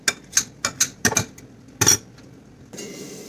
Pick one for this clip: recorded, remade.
recorded